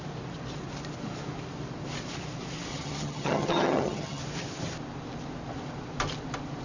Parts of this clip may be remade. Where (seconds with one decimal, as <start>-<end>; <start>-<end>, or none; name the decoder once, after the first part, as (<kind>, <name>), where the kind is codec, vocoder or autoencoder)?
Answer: 2.7-4.2 (vocoder, HiFi-GAN)